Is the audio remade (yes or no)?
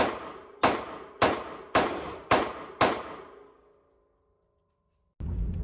no